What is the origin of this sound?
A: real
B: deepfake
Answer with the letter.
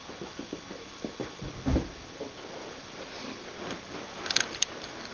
A